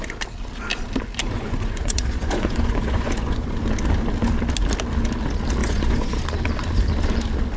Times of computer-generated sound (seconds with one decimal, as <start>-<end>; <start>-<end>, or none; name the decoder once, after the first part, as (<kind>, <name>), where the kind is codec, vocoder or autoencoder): 1.2-3.5 (vocoder, Vocos); 5.6-6.2